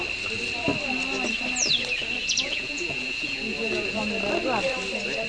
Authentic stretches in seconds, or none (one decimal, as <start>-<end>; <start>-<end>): 0.0-2.2; 4.0-5.3